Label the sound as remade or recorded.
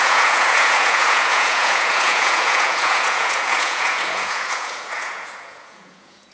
remade